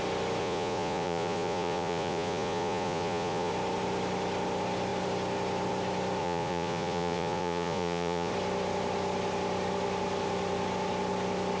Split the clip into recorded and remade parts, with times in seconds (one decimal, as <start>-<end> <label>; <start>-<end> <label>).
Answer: 0.0-0.4 recorded; 0.4-3.5 remade; 3.5-6.2 recorded; 6.2-8.3 remade; 8.3-11.6 recorded